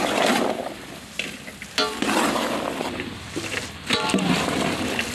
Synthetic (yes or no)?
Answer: no